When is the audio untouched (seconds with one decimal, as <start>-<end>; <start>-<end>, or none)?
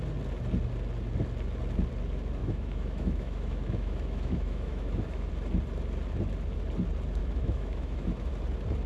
0.0-2.4; 5.3-7.2; 8.3-8.9